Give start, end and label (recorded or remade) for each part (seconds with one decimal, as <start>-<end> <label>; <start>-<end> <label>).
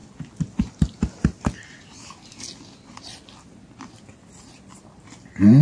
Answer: 0.0-5.6 recorded